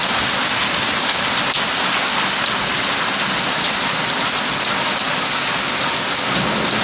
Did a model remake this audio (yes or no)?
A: no